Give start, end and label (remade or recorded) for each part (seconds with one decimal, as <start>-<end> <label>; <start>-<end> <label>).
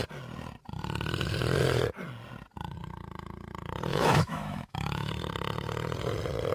0.0-3.9 recorded; 3.9-5.1 remade; 5.1-6.5 recorded